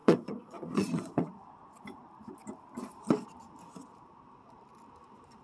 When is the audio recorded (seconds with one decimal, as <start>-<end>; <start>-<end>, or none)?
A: 1.3-5.4